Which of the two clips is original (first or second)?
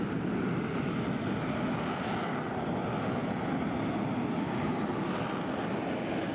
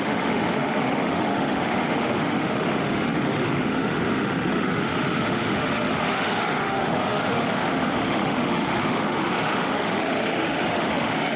first